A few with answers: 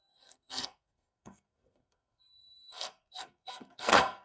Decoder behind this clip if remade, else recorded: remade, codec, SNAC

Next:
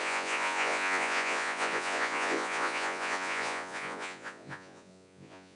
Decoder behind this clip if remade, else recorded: remade, vocoder, Vocos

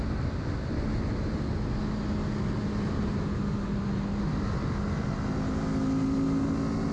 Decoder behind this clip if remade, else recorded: recorded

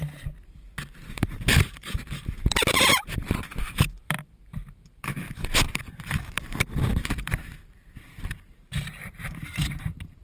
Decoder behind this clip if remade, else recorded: remade, vocoder, BigVGAN v2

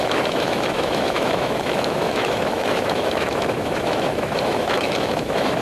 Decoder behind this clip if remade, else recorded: remade, autoencoder, DAC-VAE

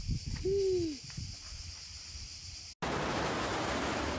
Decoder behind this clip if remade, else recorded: recorded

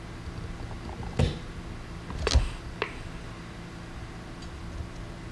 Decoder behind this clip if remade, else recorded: recorded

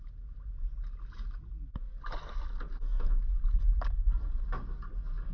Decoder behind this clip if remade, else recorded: recorded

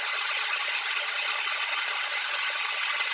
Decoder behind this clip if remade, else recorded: recorded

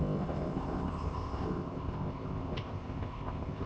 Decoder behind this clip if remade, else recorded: remade, codec, ZipCodec